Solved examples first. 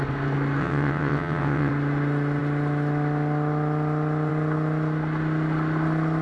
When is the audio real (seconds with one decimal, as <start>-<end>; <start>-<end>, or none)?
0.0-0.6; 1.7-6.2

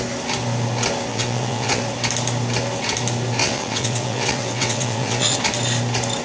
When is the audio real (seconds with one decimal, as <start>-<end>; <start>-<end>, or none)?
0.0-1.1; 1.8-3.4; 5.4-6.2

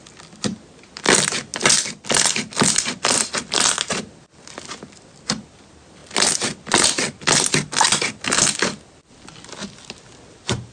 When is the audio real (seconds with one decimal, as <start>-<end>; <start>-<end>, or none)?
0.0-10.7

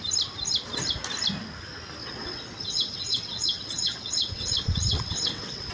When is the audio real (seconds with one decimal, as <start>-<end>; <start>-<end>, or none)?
0.0-2.0

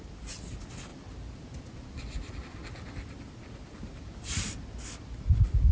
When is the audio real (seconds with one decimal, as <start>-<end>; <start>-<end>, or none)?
0.0-5.7

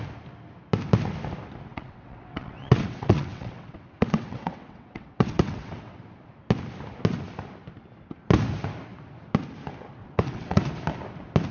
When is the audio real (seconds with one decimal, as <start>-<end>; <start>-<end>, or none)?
0.0-1.7; 6.0-10.0; 10.7-11.5

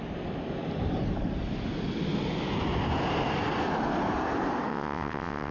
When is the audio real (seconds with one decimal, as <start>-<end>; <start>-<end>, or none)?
0.0-4.7